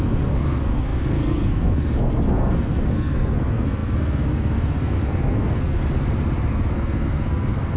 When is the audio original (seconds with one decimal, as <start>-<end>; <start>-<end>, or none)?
5.8-6.5